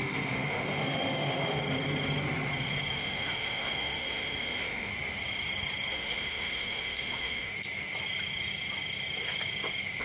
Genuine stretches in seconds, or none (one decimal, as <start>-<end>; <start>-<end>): 1.6-2.9; 4.9-5.9; 7.5-10.0